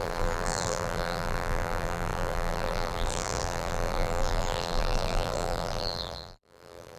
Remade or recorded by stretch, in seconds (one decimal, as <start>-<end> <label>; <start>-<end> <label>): 0.0-7.0 remade